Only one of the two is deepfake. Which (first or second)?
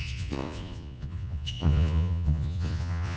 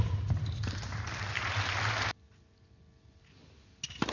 first